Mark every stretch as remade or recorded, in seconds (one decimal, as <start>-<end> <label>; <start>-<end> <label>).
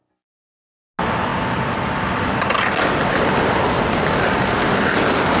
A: 0.0-5.4 recorded